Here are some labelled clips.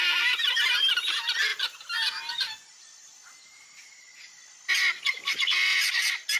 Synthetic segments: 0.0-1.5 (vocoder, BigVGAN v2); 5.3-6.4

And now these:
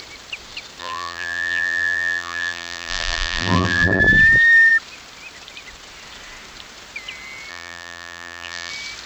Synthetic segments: 0.8-4.0 (vocoder, BigVGAN v2); 7.5-8.7

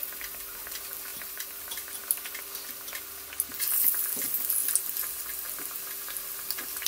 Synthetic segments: 1.1-2.0 (vocoder, BigVGAN v2)

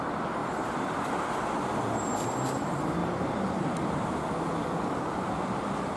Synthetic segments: 3.0-4.2 (vocoder, BigVGAN v2)

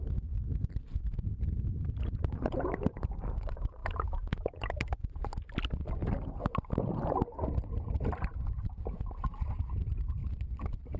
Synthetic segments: 8.3-8.8 (vocoder, BigVGAN v2); 10.2-11.0

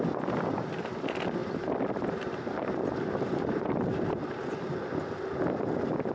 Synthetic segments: 1.4-4.8 (vocoder, BigVGAN v2)

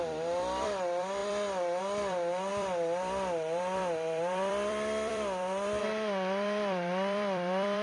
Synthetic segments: 0.0-7.8 (vocoder, BigVGAN v2)